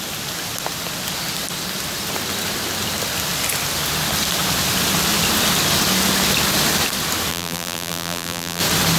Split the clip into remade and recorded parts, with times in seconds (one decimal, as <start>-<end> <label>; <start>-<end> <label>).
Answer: 0.0-7.3 recorded; 7.3-8.6 remade; 8.6-9.0 recorded